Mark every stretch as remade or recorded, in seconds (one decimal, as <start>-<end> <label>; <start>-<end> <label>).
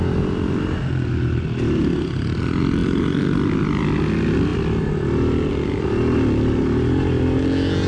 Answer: 0.0-7.9 recorded